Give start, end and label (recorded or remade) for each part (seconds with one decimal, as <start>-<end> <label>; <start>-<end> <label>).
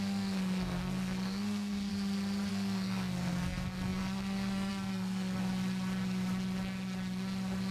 0.0-1.9 remade; 1.9-2.5 recorded; 2.5-5.4 remade; 5.4-7.7 recorded